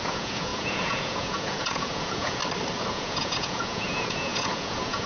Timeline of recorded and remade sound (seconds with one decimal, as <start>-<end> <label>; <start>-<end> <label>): 0.0-2.4 remade; 2.4-2.9 recorded; 2.9-5.1 remade